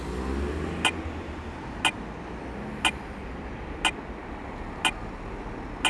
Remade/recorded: recorded